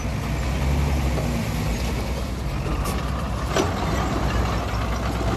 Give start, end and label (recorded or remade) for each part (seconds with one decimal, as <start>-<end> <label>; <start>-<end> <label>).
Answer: 0.0-5.4 recorded